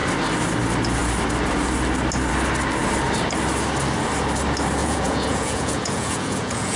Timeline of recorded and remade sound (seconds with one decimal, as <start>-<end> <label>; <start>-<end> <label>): 0.0-4.8 recorded; 4.8-6.8 remade